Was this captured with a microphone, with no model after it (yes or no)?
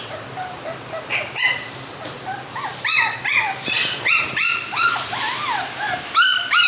no